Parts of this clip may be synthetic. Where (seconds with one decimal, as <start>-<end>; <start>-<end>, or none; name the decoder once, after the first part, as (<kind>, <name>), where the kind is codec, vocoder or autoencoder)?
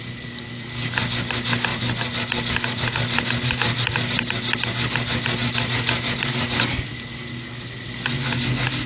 none